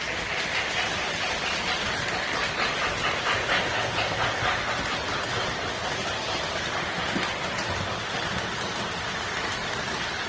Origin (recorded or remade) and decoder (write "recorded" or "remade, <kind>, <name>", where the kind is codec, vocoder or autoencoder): recorded